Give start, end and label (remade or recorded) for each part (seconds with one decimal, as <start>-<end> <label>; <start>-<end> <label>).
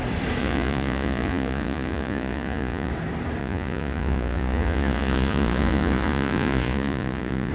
0.0-0.4 recorded; 0.4-2.9 remade; 2.9-3.4 recorded; 3.4-7.5 remade